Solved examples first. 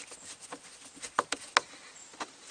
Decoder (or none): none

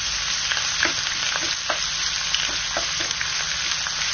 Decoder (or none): none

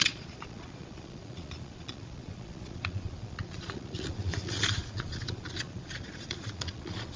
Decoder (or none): vocoder, Vocos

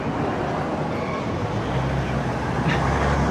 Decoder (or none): none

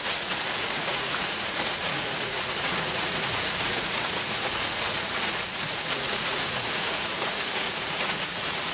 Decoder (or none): vocoder, Vocos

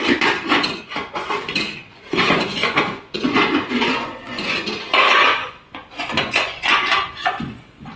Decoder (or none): vocoder, Vocos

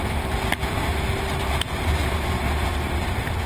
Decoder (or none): none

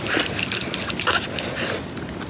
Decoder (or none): none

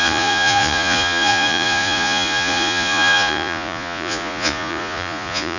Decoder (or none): vocoder, Vocos